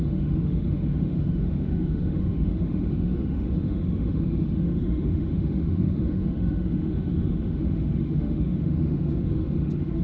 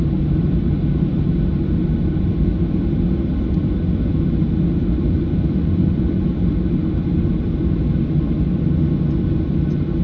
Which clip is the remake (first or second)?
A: first